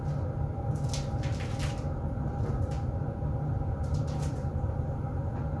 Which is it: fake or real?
real